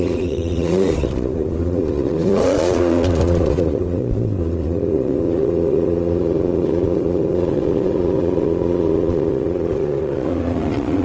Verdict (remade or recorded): remade